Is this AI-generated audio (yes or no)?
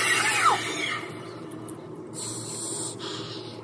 no